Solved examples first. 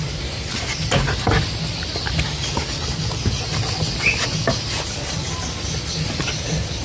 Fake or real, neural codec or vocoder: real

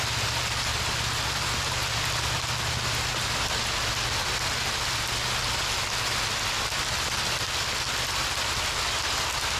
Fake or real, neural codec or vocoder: real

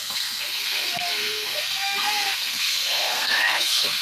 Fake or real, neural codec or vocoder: fake, codec, SNAC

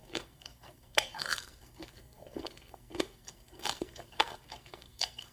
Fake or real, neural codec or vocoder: fake, codec, SNAC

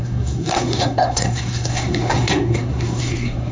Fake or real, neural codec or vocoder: fake, codec, SNAC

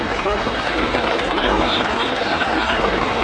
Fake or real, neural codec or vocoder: fake, codec, SNAC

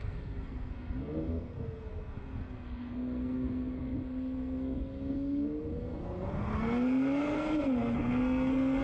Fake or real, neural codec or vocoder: fake, codec, SNAC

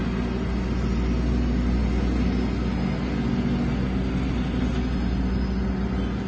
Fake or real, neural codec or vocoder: real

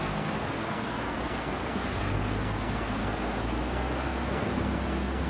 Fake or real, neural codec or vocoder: fake, codec, SNAC